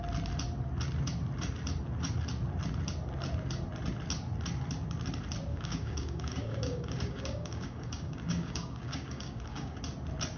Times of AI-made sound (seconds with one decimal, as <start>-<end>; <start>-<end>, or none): 5.5-9.8